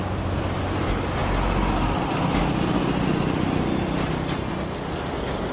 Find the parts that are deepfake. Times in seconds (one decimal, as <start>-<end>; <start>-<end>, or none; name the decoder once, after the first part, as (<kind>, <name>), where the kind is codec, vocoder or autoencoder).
none